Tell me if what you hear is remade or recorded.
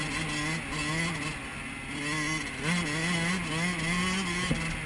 recorded